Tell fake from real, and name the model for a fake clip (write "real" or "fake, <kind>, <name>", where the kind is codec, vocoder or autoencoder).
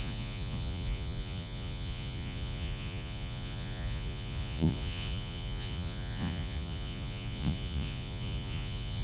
fake, vocoder, Vocos